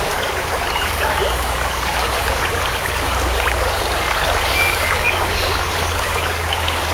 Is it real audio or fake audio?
fake